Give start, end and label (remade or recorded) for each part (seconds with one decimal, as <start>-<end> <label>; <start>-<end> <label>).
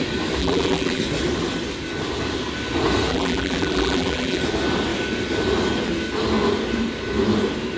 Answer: 0.0-0.4 recorded; 0.4-1.0 remade; 1.0-3.1 recorded; 3.1-4.4 remade; 4.4-7.8 recorded